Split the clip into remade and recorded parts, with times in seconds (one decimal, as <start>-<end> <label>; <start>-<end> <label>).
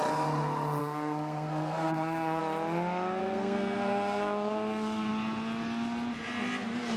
0.0-0.8 recorded; 0.8-2.4 remade; 2.4-3.2 recorded; 3.2-5.1 remade; 5.1-7.0 recorded